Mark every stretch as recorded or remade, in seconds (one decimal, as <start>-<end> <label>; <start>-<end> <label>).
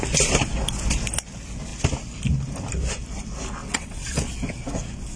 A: 0.0-3.6 recorded; 3.6-4.2 remade; 4.2-5.2 recorded